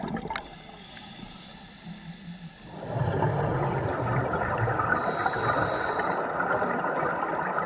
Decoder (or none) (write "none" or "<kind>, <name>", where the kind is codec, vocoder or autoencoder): none